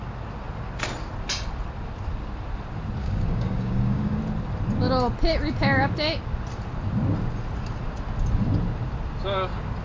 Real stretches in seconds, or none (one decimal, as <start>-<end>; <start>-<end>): 0.0-3.0; 4.2-9.8